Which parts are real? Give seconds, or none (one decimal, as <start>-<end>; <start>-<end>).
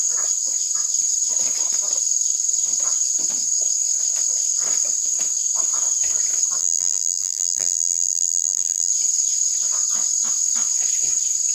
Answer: 0.0-6.6; 8.9-11.5